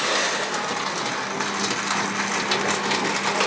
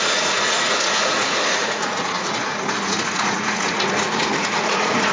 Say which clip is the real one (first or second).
first